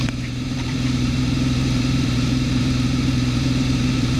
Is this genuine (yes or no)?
no